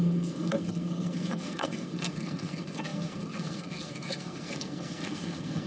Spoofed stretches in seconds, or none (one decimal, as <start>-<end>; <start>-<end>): 0.0-5.7